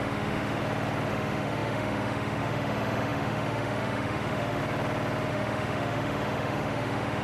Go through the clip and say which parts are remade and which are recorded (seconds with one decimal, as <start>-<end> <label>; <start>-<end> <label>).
0.0-0.6 remade; 0.6-1.1 recorded; 1.1-4.6 remade; 4.6-5.3 recorded; 5.3-7.2 remade